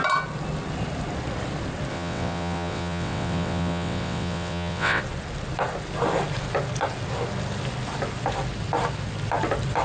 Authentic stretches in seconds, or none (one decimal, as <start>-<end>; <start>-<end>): 0.0-1.9; 5.0-9.8